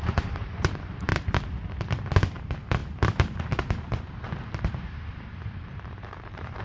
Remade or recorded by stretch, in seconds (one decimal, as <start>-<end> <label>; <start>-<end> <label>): 0.0-1.1 remade; 1.1-2.4 recorded; 2.4-6.6 remade